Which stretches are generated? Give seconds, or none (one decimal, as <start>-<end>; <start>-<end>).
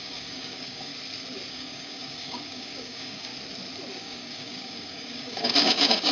0.0-0.9; 1.5-3.3; 4.0-6.1